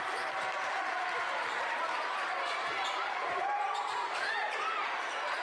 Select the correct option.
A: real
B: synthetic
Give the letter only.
B